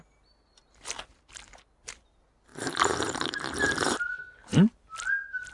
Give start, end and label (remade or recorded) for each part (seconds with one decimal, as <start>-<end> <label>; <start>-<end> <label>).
0.0-2.5 recorded; 2.5-4.0 remade; 4.0-5.5 recorded